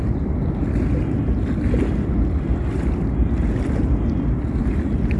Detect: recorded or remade recorded